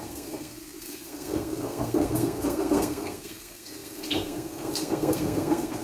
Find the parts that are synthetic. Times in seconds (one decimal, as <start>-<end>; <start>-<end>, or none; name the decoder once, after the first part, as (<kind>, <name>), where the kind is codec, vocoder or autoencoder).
0.0-5.8 (codec, SNAC)